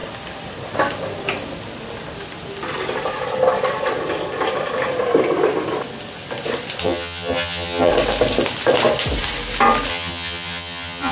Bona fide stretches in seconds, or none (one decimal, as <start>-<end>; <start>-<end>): 0.0-6.8; 7.9-9.9